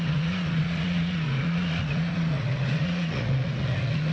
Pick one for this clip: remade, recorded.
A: remade